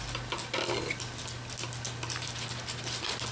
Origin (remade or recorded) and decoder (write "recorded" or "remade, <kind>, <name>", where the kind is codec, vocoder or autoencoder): recorded